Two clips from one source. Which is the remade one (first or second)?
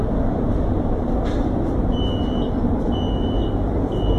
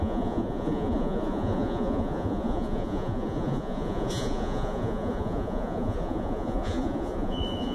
second